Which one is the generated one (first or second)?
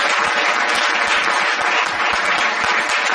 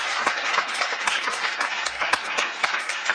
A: second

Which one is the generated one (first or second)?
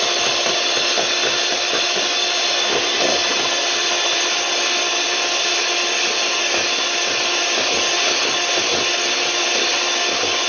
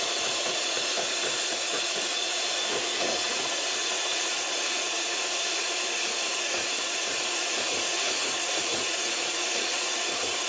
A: second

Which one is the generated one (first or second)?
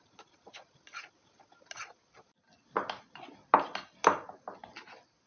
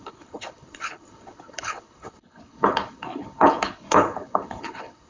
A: second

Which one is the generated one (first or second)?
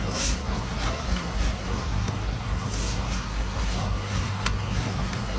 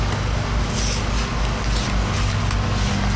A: first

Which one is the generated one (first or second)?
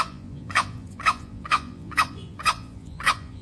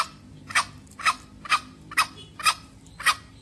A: first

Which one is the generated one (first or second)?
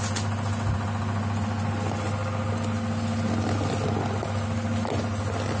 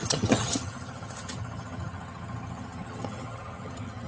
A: second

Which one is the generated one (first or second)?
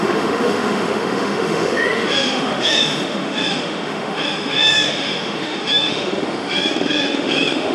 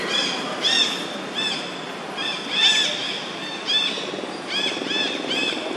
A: first